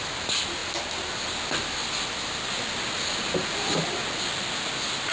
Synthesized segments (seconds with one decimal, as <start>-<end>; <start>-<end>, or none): none